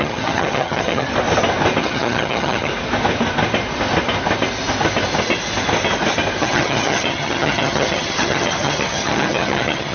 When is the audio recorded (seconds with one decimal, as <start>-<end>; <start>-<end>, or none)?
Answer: 1.1-1.8; 2.7-6.4